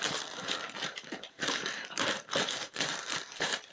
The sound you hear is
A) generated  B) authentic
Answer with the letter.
A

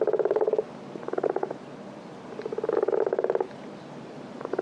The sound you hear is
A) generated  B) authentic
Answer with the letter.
B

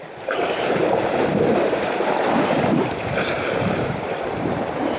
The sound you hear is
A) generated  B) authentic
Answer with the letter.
A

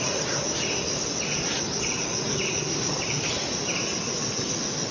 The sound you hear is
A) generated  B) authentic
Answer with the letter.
B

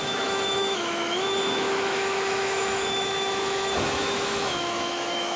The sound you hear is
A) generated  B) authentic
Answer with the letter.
A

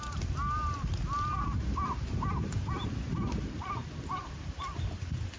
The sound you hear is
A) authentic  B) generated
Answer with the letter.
A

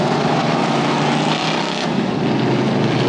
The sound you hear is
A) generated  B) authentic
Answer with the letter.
B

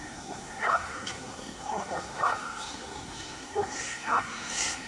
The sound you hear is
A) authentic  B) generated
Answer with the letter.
B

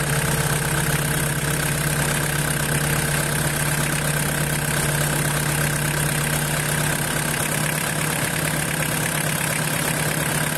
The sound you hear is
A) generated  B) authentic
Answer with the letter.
B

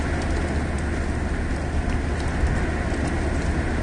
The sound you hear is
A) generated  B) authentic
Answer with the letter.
B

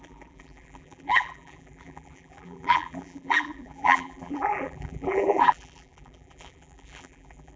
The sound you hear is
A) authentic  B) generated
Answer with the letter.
B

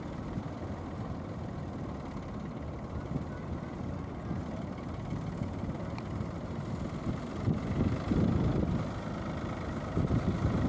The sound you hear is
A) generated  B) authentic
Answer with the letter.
B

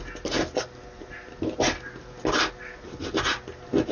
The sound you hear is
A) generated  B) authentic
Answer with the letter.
B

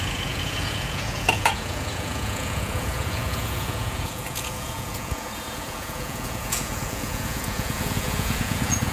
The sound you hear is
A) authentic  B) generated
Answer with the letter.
B